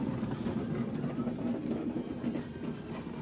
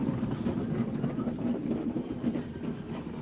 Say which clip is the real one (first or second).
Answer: first